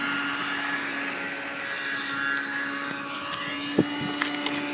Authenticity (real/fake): real